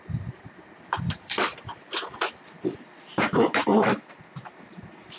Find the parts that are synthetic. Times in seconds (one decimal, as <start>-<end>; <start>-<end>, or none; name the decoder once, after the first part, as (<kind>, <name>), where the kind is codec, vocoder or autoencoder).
0.0-3.7 (vocoder, BigVGAN v2)